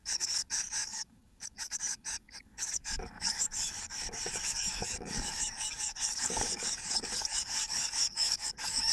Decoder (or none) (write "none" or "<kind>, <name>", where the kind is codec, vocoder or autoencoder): codec, DAC